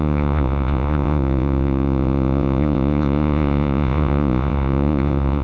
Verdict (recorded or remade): remade